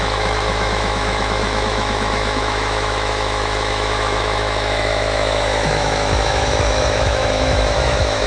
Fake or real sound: fake